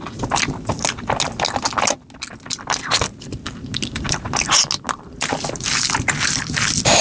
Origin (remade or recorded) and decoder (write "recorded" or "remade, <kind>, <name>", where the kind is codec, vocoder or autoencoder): recorded